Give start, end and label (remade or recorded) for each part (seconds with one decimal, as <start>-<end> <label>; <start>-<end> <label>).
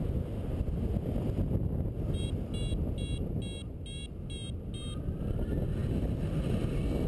0.0-7.1 recorded